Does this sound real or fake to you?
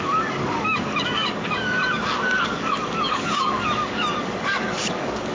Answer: fake